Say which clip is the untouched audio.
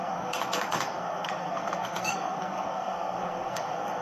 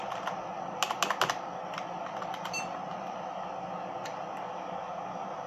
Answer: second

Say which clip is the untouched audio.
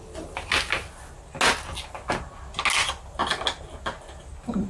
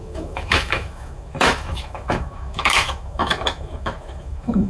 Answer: first